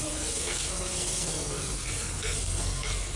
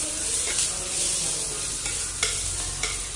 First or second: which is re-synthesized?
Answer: first